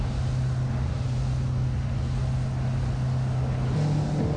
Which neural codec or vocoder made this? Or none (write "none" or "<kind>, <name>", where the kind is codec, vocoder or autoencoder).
none